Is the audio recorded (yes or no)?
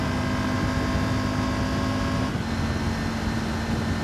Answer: yes